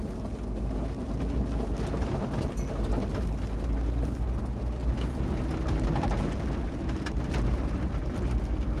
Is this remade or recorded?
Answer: recorded